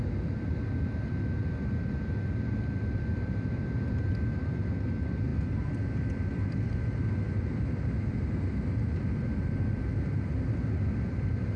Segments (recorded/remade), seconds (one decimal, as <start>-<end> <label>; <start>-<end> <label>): 0.0-3.1 recorded; 3.1-4.1 remade; 4.1-11.6 recorded